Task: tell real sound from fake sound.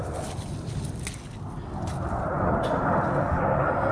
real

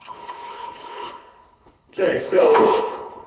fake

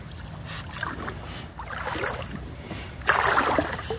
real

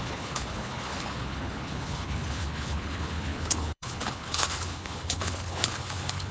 fake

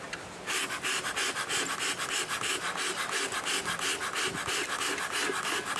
real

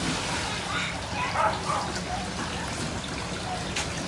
real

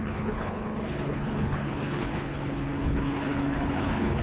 fake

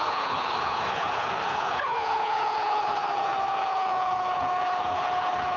fake